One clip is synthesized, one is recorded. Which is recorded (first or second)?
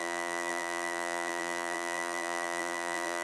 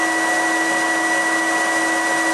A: second